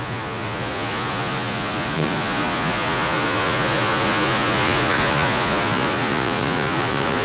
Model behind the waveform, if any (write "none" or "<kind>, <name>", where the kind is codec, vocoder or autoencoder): vocoder, Vocos